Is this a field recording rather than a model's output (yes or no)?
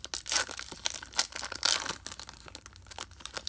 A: yes